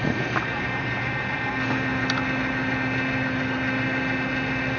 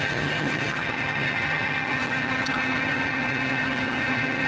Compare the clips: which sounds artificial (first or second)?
second